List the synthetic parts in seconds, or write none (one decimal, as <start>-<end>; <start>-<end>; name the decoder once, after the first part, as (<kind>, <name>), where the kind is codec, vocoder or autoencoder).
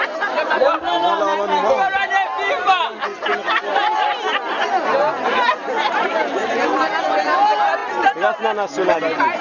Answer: none